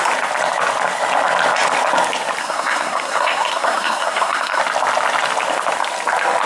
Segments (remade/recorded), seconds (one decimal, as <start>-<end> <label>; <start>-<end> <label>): 0.0-2.4 recorded; 2.4-4.6 remade; 4.6-6.5 recorded